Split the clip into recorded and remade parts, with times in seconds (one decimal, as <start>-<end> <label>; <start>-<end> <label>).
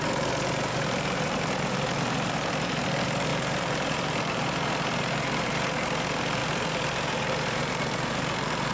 0.0-0.7 recorded; 0.7-2.9 remade; 2.9-3.3 recorded; 3.3-5.5 remade; 5.5-6.4 recorded; 6.4-8.7 remade